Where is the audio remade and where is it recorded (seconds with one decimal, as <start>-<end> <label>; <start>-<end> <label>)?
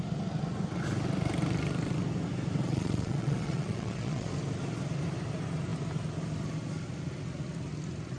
0.0-2.6 recorded; 2.6-4.3 remade; 4.3-8.2 recorded